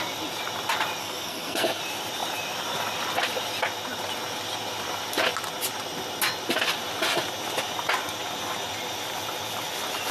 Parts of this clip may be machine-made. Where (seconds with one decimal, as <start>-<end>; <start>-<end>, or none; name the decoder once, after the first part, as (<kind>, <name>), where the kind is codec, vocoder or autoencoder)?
1.0-1.8 (codec, SNAC)